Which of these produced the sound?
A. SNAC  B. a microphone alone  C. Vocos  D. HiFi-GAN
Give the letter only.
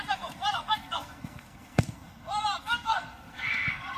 A